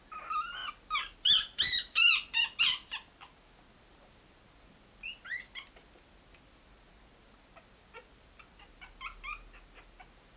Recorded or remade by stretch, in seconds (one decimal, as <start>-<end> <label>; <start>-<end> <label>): 0.0-10.4 recorded